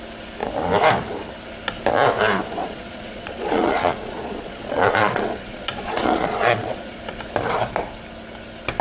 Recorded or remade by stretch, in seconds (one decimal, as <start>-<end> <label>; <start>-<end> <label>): 0.0-2.6 recorded; 2.6-7.0 remade; 7.0-8.8 recorded